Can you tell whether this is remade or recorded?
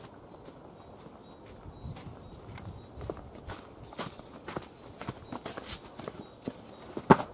recorded